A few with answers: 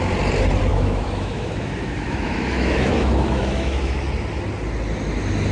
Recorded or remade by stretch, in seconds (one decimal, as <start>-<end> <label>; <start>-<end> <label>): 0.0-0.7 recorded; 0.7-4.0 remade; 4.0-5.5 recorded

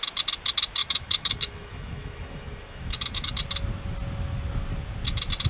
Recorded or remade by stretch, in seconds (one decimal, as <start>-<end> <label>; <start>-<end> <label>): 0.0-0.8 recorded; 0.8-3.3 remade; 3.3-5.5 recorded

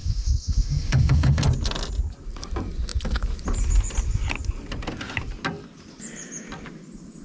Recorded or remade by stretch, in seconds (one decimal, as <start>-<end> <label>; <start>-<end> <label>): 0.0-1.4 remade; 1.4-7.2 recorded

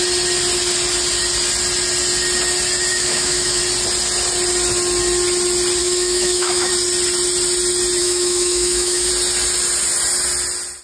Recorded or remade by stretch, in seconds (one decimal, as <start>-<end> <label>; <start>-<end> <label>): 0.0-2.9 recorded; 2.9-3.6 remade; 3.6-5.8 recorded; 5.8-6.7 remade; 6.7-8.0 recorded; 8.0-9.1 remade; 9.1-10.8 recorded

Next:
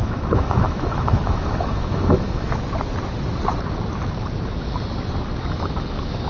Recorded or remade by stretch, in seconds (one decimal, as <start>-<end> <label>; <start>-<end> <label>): 0.0-2.6 remade; 2.6-6.3 recorded

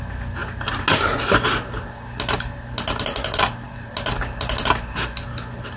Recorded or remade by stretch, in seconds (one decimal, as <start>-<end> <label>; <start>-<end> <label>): 0.0-5.8 recorded

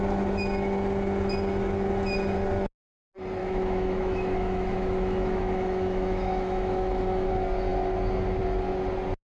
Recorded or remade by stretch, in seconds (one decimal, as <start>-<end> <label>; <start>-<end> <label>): 0.0-3.4 recorded; 3.4-7.3 remade; 7.3-9.3 recorded

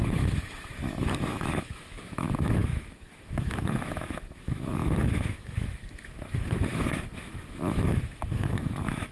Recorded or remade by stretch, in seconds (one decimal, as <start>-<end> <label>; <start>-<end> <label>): 0.0-9.1 remade